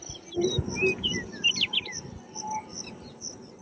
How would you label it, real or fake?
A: real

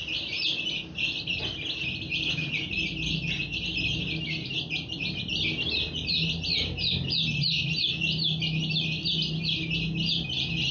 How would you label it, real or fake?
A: real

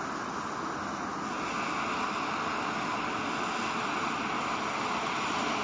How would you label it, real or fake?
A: real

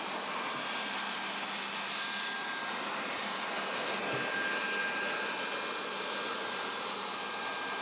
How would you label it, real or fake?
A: real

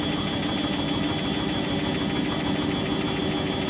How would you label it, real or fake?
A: real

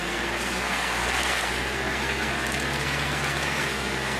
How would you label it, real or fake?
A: fake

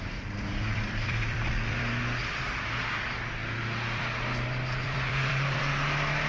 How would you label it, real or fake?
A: fake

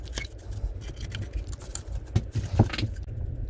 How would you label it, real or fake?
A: real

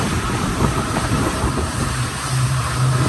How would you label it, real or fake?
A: fake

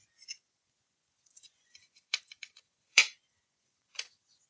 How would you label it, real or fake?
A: fake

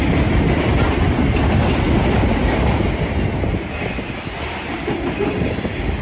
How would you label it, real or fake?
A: real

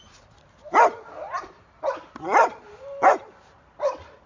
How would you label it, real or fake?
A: real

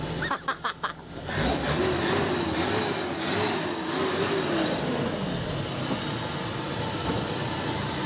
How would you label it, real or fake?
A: real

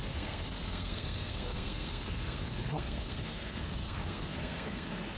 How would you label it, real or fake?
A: fake